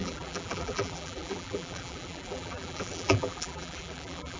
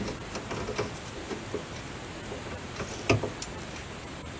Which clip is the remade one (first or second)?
first